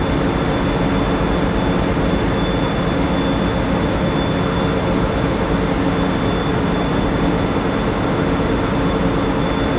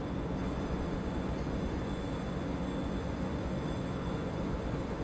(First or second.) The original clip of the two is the first